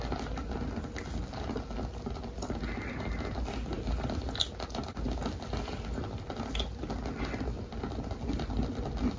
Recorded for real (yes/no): yes